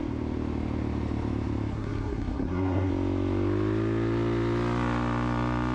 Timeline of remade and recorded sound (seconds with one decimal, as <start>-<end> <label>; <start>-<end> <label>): 0.0-1.7 recorded; 1.7-2.9 remade; 2.9-5.7 recorded

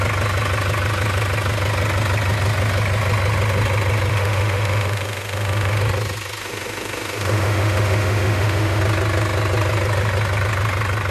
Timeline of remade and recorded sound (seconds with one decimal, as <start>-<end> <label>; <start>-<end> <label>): 0.0-4.1 recorded; 4.1-5.8 remade; 5.8-6.4 recorded; 6.4-8.8 remade; 8.8-11.1 recorded

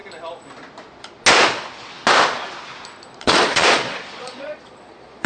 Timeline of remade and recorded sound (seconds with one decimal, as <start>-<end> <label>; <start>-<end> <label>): 0.0-3.2 recorded; 3.2-5.3 remade

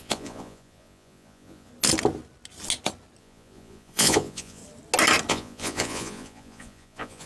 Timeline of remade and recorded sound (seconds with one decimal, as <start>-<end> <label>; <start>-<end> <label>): 0.0-1.7 remade; 1.7-3.2 recorded; 3.2-4.6 remade; 4.6-5.3 recorded; 5.3-7.3 remade

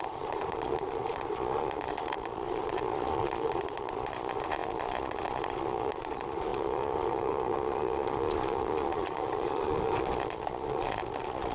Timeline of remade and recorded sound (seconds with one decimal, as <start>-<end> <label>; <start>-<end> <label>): 0.0-11.5 remade

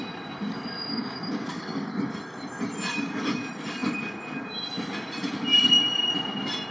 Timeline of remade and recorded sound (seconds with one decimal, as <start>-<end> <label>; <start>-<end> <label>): 0.0-0.9 recorded; 0.9-2.2 remade; 2.2-6.7 recorded